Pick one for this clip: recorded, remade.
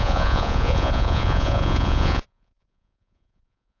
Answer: remade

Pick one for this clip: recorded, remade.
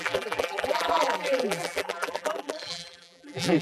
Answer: remade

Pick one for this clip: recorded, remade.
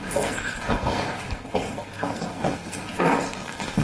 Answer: remade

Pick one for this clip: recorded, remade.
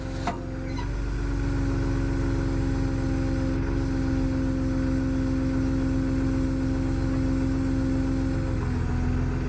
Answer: recorded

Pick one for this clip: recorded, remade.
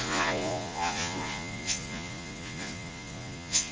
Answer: remade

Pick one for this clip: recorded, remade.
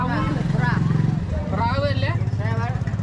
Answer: recorded